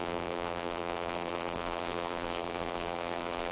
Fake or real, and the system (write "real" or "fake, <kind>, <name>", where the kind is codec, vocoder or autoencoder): fake, vocoder, BigVGAN v2